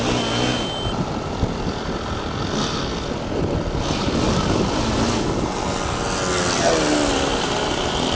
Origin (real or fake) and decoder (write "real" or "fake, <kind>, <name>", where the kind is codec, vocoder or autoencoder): real